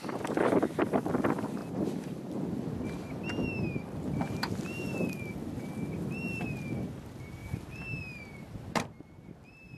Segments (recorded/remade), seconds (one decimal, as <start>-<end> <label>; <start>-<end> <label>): 0.0-9.8 recorded